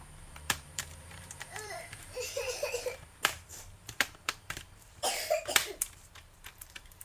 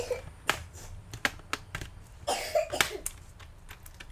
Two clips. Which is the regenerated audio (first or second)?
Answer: first